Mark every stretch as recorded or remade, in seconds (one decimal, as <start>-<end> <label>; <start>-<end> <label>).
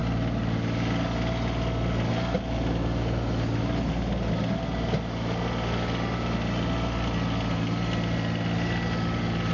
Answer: 0.0-9.5 recorded